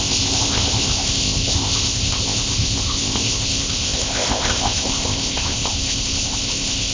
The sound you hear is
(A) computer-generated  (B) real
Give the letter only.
A